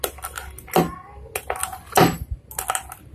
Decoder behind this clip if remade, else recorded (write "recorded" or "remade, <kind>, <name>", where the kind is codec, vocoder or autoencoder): recorded